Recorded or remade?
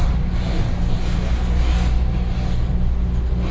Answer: recorded